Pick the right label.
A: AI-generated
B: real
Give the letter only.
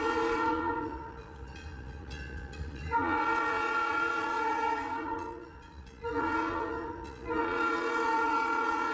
A